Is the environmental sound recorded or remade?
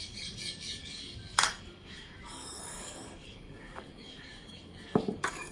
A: remade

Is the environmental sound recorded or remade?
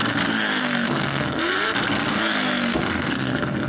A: remade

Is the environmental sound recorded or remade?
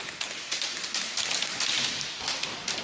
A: recorded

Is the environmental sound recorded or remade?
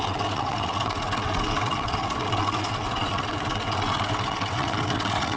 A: remade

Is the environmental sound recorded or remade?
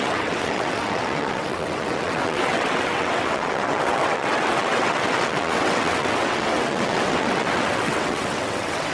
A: remade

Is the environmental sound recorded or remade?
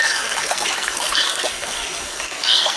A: remade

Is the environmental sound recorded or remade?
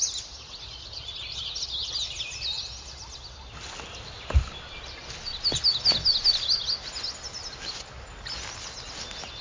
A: recorded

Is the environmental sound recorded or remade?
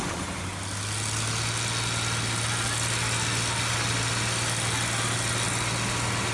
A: recorded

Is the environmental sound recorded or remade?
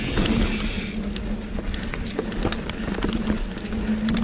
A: recorded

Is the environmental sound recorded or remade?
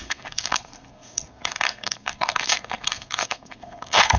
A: remade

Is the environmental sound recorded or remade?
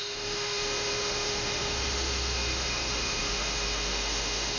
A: remade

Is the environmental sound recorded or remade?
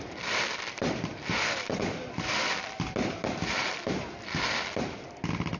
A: remade